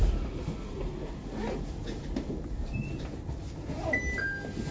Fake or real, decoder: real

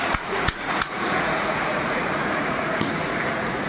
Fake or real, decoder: fake, vocoder, Vocos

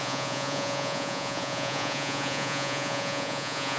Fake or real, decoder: fake, vocoder, Vocos